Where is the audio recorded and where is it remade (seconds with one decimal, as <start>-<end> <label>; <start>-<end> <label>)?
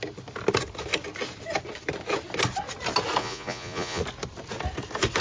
0.0-3.2 recorded; 3.2-4.0 remade; 4.0-5.2 recorded